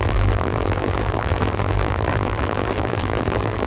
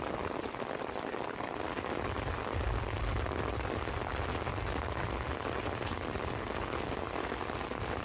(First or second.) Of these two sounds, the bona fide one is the second